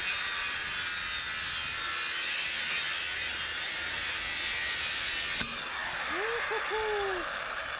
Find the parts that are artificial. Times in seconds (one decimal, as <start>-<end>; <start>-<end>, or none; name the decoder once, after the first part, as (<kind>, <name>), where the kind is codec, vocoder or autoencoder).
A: none